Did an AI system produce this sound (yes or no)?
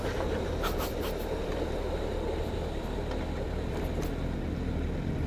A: no